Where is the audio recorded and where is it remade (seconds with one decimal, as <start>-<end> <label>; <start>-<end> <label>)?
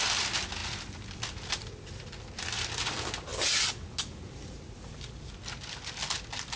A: 0.0-6.6 recorded